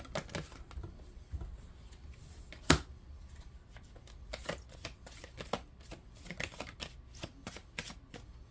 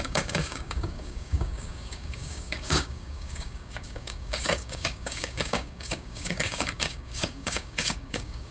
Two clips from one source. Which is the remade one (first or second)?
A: second